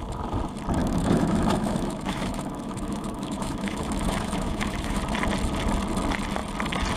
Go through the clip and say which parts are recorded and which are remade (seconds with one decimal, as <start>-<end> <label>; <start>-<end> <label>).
0.0-0.8 recorded; 0.8-5.0 remade; 5.0-7.0 recorded